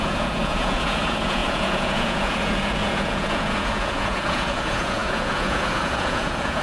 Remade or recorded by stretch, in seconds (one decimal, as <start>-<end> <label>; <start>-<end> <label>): 0.0-6.6 remade